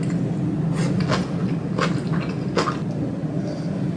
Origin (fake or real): real